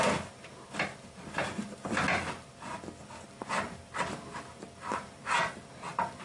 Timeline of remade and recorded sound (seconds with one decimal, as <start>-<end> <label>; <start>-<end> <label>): 0.0-6.2 recorded